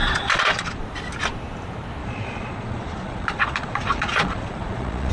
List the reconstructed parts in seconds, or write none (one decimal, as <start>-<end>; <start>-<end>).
0.0-0.8; 2.0-5.1